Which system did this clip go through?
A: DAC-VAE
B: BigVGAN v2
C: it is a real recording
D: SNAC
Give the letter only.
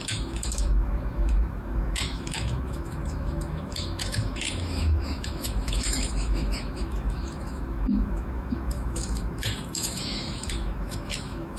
A